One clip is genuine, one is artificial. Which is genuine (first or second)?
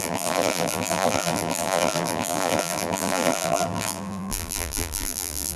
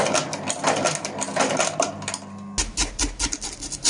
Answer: second